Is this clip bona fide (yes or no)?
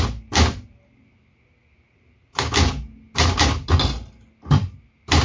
yes